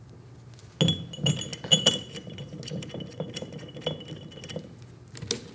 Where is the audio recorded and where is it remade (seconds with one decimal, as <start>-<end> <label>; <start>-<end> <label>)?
0.0-5.5 recorded